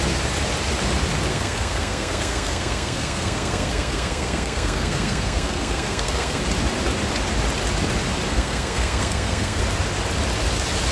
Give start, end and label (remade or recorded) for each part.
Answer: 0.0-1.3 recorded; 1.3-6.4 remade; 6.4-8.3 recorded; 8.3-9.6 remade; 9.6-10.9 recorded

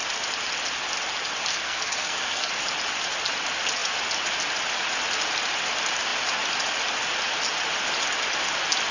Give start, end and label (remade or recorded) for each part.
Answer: 0.0-1.5 recorded; 1.5-2.5 remade; 2.5-8.9 recorded

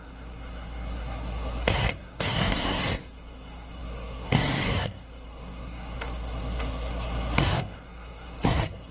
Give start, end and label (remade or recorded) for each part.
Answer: 0.0-8.9 remade

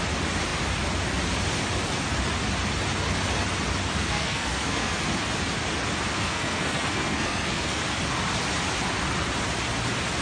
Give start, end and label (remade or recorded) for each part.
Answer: 0.0-3.9 recorded; 3.9-5.0 remade; 5.0-6.1 recorded; 6.1-7.8 remade; 7.8-10.2 recorded